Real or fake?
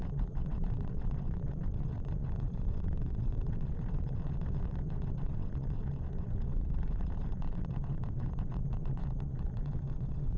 fake